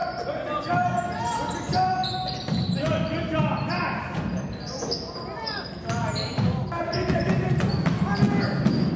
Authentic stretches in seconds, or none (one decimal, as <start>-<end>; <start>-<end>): 0.0-9.0